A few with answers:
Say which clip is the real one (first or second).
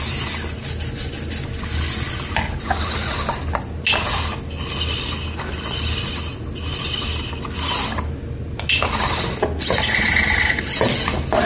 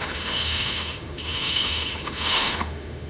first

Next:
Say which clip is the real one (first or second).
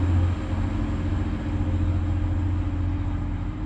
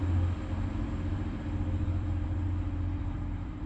first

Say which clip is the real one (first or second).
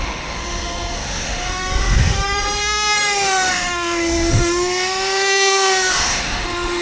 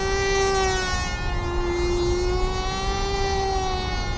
second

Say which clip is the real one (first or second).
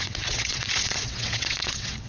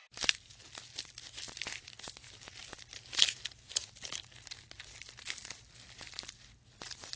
second